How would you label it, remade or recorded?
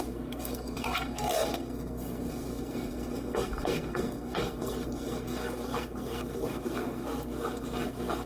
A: remade